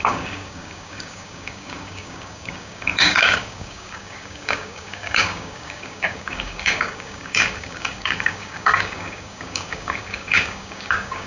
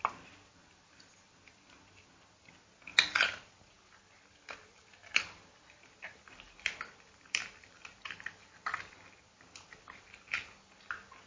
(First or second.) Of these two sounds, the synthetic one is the first